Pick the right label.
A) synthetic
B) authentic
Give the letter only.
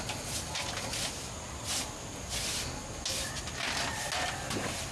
B